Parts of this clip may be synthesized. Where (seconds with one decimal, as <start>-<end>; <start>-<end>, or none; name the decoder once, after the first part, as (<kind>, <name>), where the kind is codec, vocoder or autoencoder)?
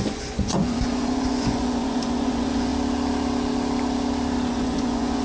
0.0-2.7 (vocoder, Vocos); 4.5-5.2